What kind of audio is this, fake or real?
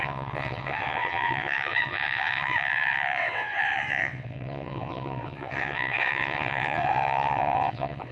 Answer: fake